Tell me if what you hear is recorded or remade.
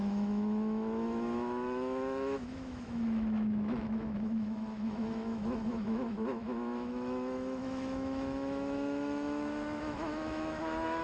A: remade